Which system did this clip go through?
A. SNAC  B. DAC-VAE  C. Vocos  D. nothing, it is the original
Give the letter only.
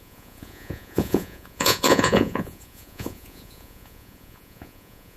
C